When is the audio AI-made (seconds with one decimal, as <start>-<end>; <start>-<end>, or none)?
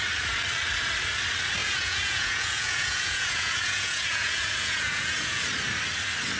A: 1.6-5.4